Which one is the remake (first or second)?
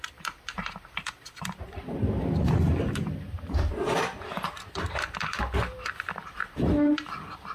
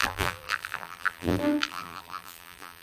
second